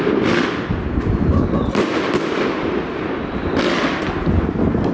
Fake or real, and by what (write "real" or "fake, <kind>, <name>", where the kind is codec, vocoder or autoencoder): real